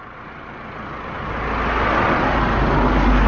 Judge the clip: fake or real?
real